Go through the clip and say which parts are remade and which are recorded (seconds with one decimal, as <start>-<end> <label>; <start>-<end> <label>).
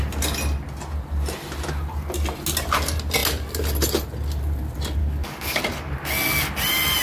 0.0-5.0 recorded; 5.0-5.6 remade; 5.6-7.0 recorded